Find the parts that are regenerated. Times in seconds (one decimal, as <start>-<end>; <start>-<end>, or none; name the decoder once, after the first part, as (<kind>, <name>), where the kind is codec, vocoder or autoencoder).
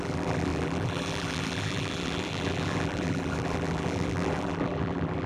0.0-5.3 (vocoder, BigVGAN v2)